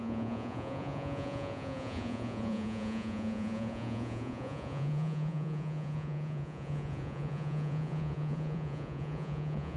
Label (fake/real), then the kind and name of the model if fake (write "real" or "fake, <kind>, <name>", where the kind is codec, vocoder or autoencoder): fake, vocoder, Vocos